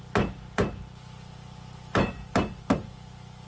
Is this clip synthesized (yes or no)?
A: no